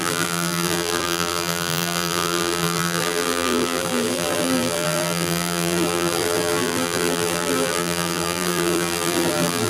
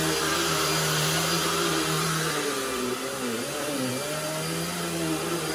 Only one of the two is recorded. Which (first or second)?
second